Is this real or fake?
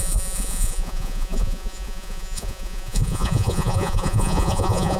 fake